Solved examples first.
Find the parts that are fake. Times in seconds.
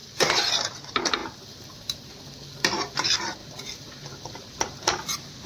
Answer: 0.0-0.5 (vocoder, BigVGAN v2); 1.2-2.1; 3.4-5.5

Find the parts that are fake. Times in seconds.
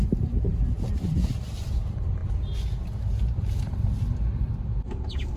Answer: 0.0-0.5 (vocoder, BigVGAN v2); 1.4-2.2; 3.4-3.9; 4.4-5.4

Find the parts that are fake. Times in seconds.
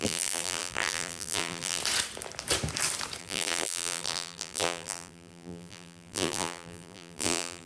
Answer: 0.0-1.8 (vocoder, BigVGAN v2); 3.2-7.7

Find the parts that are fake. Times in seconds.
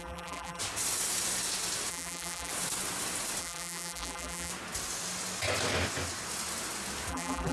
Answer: 0.0-0.6 (vocoder, BigVGAN v2); 1.9-2.5; 3.4-4.5; 7.1-7.5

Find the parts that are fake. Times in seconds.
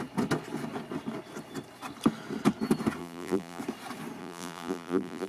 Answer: 3.0-3.6 (vocoder, BigVGAN v2); 4.2-5.3